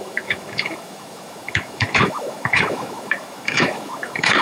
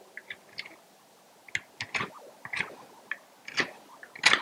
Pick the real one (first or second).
second